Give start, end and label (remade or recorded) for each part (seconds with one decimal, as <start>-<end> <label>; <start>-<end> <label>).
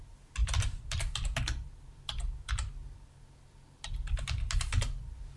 0.0-5.4 recorded